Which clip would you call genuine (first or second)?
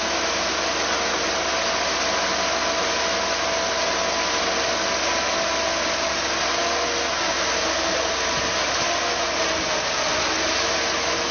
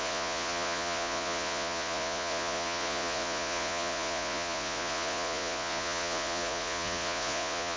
first